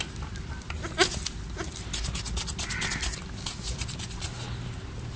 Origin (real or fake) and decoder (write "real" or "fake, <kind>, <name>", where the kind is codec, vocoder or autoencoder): real